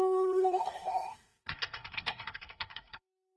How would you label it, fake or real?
fake